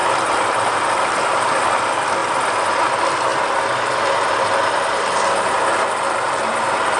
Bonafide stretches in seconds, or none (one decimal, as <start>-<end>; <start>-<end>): 1.2-7.0